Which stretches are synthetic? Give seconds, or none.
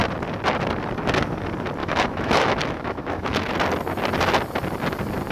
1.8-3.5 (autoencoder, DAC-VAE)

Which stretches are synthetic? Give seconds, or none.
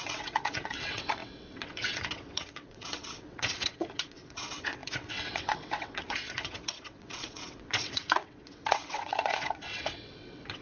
0.0-10.6 (vocoder, WaveNeXt)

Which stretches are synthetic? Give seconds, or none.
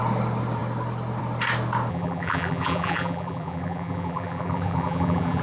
1.9-5.4 (vocoder, BigVGAN v2)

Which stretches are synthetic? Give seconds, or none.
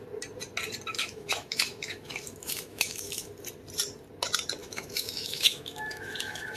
0.9-3.3 (autoencoder, DAC-VAE); 4.6-6.6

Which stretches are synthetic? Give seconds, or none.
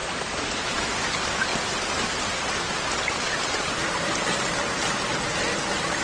none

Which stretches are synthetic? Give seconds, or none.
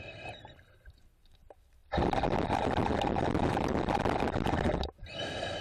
none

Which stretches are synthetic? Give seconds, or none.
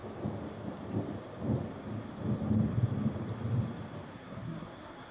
4.1-5.1 (codec, SNAC)